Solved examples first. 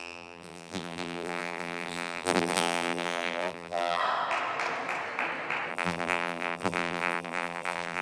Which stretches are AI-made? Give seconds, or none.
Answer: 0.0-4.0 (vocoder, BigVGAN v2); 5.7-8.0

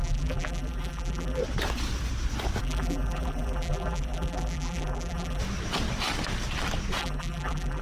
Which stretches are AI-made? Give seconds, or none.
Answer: 0.0-1.4 (vocoder, BigVGAN v2); 2.6-5.4; 7.0-7.8

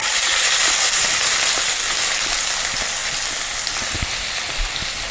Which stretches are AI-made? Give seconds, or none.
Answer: 0.0-1.4 (vocoder, BigVGAN v2)

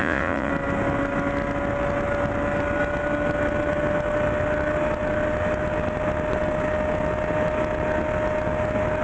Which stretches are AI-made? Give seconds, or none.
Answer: 0.0-0.5 (vocoder, Vocos)

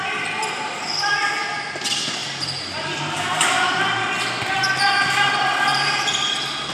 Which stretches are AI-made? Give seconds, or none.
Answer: 5.7-6.3 (vocoder, BigVGAN v2)

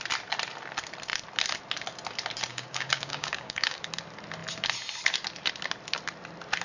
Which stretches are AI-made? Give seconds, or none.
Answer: 2.5-3.8 (codec, DAC)